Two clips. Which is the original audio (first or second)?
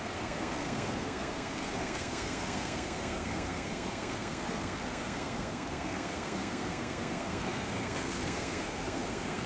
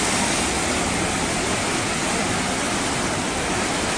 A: second